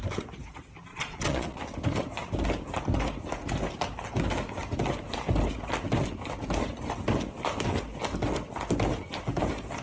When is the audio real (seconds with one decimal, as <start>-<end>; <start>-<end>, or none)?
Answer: 0.0-0.9; 1.6-9.8